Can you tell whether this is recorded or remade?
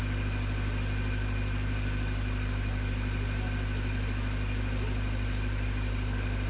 recorded